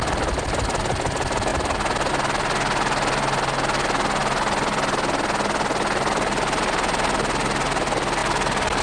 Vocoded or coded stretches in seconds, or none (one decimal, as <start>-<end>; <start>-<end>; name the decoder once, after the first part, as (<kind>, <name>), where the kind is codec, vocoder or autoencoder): none